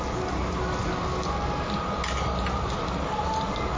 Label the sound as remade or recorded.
recorded